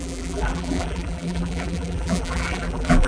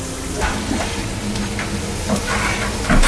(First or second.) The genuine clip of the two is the second